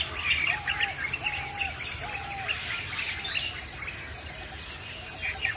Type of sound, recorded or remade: recorded